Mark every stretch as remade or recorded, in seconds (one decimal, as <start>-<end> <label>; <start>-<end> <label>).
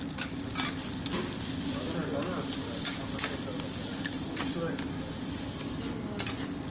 0.0-6.7 recorded